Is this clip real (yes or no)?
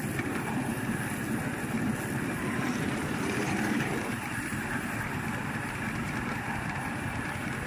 yes